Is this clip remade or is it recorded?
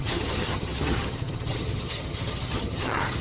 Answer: remade